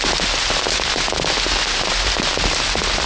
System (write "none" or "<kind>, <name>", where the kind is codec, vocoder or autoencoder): none